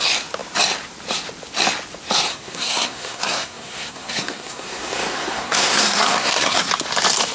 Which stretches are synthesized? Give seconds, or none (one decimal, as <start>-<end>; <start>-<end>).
2.3-6.7